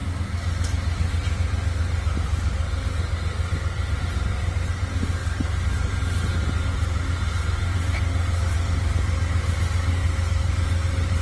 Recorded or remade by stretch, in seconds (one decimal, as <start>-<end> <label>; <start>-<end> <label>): 0.0-11.2 recorded